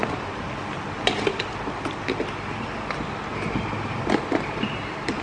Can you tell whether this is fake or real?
real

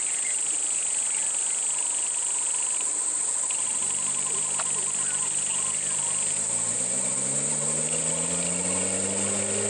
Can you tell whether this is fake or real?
real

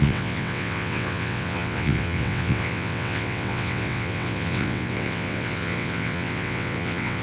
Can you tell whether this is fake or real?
fake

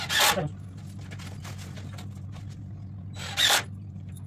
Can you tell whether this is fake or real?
real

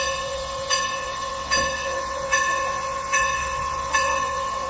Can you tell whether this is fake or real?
fake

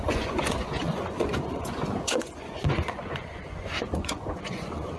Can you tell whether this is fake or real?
fake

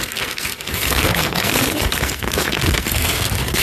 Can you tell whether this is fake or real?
fake